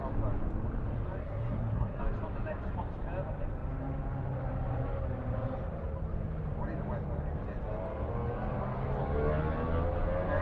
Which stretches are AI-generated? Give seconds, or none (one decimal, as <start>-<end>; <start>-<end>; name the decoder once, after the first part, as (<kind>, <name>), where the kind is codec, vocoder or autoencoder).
1.2-2.0 (codec, SNAC)

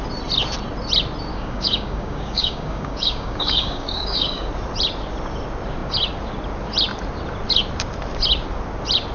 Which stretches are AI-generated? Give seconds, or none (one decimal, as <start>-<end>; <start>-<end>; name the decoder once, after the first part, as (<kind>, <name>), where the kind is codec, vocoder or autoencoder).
1.3-4.5 (codec, DAC)

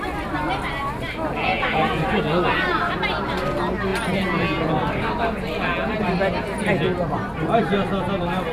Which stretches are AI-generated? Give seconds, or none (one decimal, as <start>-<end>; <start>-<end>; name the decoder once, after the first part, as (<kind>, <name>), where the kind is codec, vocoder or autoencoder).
none